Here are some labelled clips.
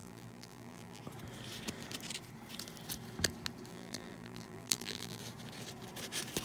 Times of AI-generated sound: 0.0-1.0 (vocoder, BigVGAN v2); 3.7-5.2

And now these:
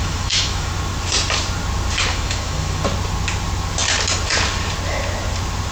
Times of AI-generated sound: 0.0-0.7 (autoencoder, DAC-VAE); 2.1-2.8

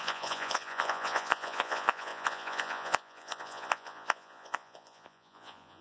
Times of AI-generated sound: 0.0-5.8 (vocoder, Vocos)

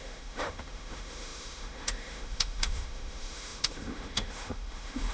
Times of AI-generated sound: 0.0-5.1 (autoencoder, DAC-VAE)

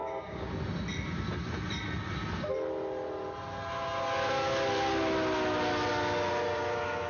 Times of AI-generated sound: 0.0-0.5 (codec, DAC)